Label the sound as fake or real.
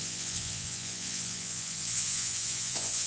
fake